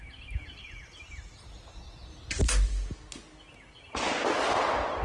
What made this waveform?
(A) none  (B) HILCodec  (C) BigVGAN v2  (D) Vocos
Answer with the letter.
A